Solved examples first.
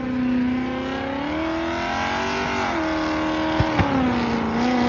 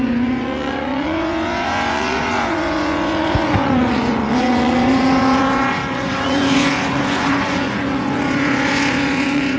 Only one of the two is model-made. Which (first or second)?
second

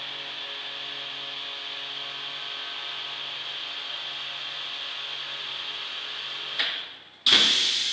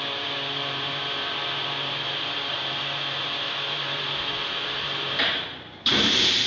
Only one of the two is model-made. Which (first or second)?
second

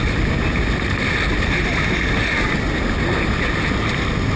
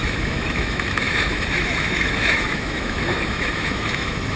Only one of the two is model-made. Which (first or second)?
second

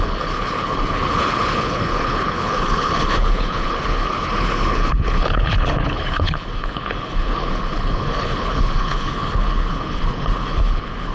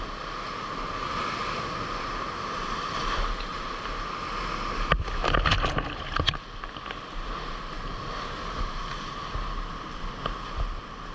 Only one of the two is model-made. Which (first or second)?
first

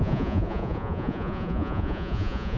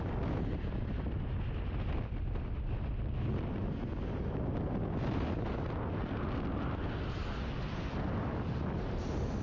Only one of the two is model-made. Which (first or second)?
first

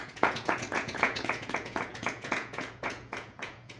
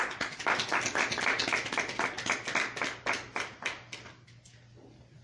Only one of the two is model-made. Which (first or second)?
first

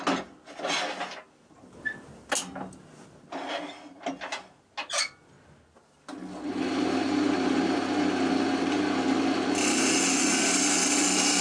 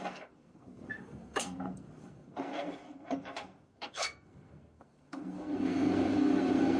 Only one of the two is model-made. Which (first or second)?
second